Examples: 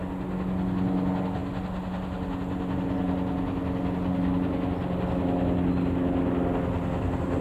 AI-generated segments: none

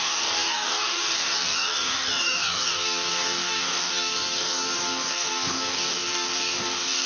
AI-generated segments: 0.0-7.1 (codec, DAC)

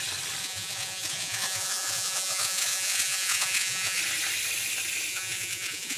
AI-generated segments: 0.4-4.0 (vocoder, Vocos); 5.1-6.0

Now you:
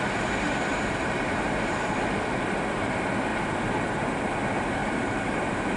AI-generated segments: 0.7-1.9 (vocoder, BigVGAN v2); 4.8-5.8

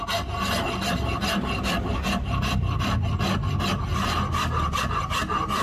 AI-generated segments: none

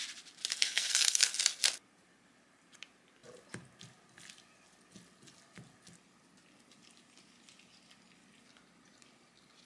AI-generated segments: 0.5-1.3 (codec, SNAC)

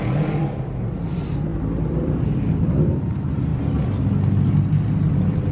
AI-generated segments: 0.0-3.5 (vocoder, BigVGAN v2); 5.1-5.5

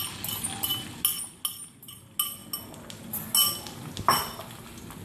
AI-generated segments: none